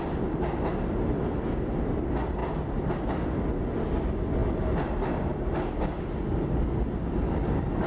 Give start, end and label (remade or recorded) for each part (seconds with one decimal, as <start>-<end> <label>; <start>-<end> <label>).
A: 0.0-7.9 recorded